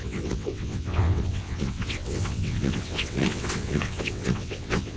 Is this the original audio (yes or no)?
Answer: no